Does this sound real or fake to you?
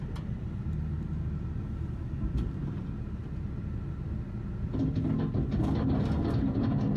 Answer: real